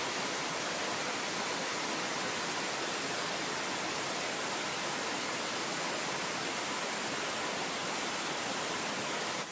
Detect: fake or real real